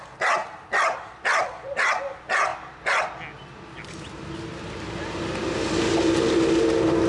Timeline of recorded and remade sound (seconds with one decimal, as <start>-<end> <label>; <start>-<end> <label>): 0.0-7.1 recorded